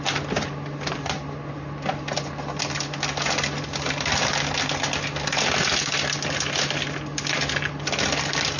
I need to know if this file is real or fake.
real